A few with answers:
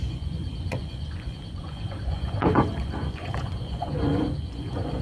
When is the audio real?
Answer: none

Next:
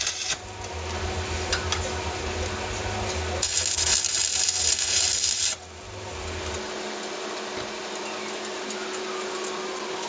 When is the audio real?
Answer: 0.0-10.1

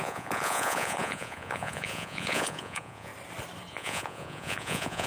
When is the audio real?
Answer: 3.1-3.7